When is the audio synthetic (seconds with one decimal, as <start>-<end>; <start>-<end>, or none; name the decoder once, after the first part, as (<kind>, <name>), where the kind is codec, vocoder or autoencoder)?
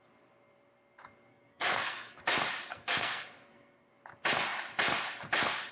1.3-2.2 (codec, SNAC); 2.7-3.9